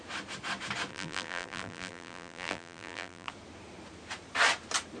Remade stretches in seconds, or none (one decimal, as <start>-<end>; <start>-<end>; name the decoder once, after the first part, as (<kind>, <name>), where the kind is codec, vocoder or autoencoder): 0.9-3.3 (vocoder, BigVGAN v2)